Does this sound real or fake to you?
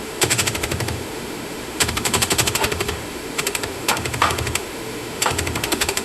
fake